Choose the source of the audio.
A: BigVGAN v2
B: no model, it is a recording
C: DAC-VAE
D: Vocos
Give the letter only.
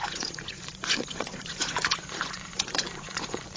D